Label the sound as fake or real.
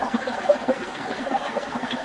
fake